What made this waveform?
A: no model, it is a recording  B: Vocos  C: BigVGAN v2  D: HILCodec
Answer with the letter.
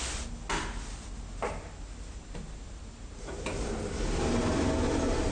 A